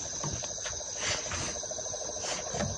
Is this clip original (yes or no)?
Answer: yes